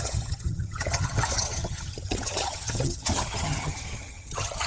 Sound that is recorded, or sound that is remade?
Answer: remade